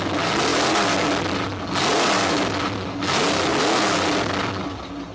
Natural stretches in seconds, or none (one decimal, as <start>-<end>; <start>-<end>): 0.0-5.1